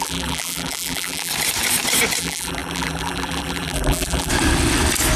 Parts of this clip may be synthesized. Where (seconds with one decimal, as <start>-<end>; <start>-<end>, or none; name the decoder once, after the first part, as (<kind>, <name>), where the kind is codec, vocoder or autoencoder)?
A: 0.0-1.3 (vocoder, BigVGAN v2); 2.2-4.3